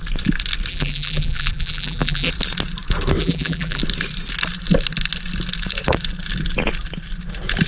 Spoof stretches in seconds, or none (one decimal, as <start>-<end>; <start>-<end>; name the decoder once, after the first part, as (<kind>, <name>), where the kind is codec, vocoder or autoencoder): 0.7-2.3 (vocoder, BigVGAN v2); 3.2-3.8